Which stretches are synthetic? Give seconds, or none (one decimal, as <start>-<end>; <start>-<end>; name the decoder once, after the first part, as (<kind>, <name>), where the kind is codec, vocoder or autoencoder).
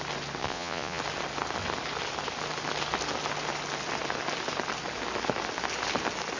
0.4-1.0 (vocoder, Vocos)